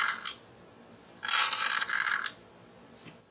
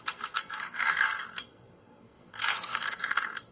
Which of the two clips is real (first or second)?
first